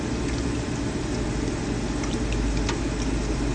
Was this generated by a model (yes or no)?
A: no